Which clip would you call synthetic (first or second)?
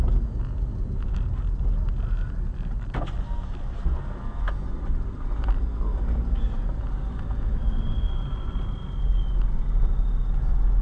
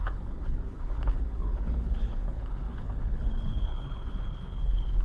second